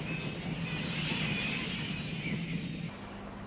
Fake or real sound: real